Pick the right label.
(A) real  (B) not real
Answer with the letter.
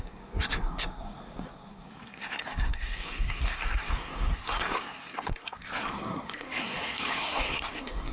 B